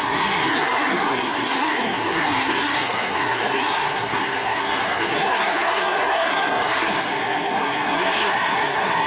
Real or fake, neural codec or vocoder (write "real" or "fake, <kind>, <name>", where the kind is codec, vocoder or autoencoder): fake, codec, SNAC